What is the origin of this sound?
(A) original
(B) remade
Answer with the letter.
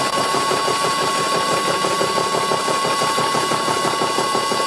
B